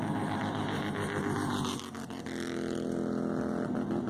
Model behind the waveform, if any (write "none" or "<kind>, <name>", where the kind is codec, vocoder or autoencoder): none